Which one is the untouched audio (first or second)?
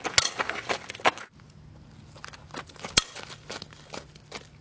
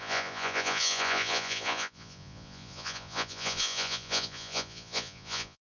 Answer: first